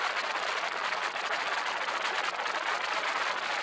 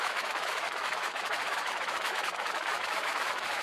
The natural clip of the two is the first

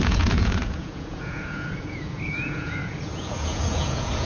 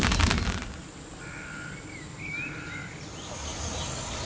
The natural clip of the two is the second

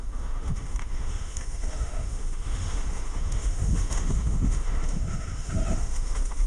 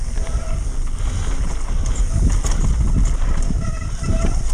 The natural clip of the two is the second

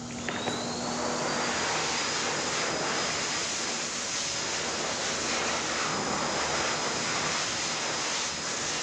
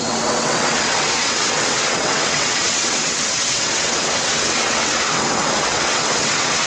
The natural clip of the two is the first